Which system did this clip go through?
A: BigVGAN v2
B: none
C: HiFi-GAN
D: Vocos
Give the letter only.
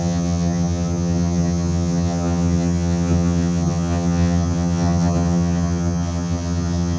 C